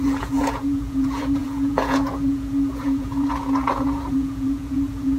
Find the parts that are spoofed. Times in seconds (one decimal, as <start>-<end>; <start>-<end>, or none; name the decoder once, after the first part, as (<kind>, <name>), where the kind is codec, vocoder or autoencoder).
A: 0.0-5.2 (vocoder, Vocos)